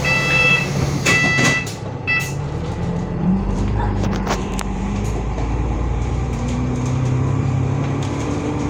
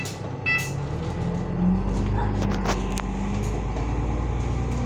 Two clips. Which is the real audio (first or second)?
second